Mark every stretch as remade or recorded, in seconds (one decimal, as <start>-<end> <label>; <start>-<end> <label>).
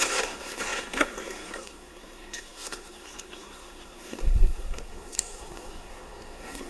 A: 0.0-6.7 remade